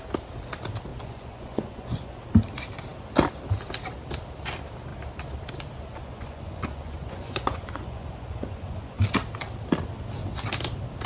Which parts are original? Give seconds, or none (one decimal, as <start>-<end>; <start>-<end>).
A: 0.0-0.9; 2.2-6.0; 9.0-11.1